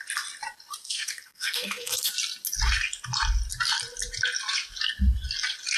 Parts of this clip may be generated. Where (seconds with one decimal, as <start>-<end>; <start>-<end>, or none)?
0.8-2.1